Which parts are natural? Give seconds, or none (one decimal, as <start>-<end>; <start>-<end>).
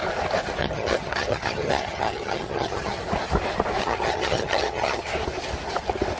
0.0-0.6; 3.0-3.8; 5.1-6.2